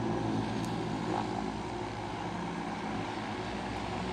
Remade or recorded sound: recorded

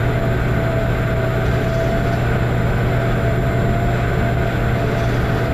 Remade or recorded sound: recorded